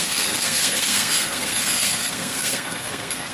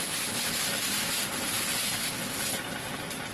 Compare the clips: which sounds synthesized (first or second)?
first